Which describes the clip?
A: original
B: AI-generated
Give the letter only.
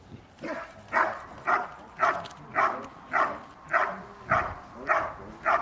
A